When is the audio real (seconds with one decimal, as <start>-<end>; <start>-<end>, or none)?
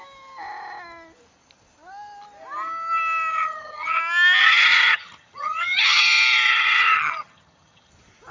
0.0-3.3; 4.0-4.4; 6.0-6.5; 7.9-8.3